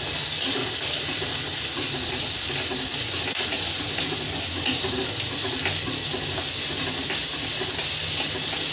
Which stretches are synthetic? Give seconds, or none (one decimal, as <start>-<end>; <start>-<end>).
none